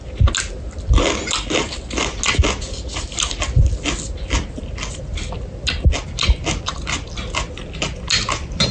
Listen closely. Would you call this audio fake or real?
real